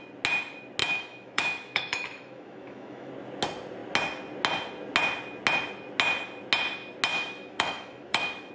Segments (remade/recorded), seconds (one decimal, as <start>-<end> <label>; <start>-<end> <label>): 0.0-0.8 recorded; 0.8-3.1 remade; 3.1-7.1 recorded; 7.1-8.5 remade